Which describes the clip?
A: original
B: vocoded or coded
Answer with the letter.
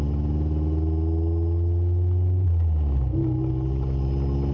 A